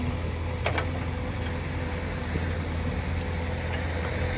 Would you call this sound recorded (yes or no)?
yes